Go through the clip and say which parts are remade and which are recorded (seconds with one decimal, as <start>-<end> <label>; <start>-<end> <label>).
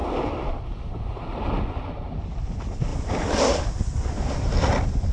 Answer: 0.0-2.9 recorded; 2.9-3.6 remade; 3.6-5.1 recorded